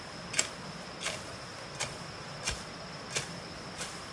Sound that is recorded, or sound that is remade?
recorded